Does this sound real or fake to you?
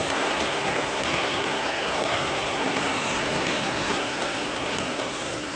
fake